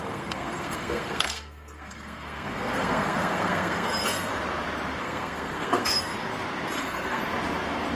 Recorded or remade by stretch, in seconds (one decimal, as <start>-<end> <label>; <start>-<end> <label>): 0.0-4.3 remade; 4.3-5.0 recorded; 5.0-6.1 remade; 6.1-6.8 recorded; 6.8-7.2 remade; 7.2-8.0 recorded